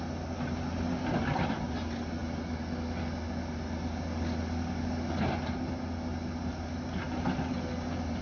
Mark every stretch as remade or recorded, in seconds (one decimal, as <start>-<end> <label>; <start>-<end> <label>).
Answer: 0.0-8.2 recorded